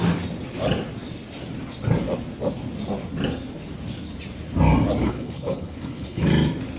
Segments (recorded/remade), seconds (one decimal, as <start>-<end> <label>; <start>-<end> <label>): 0.0-5.0 recorded; 5.0-6.3 remade; 6.3-6.8 recorded